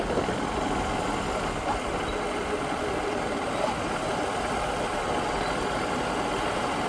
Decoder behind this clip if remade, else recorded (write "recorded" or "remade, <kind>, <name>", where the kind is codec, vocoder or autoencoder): recorded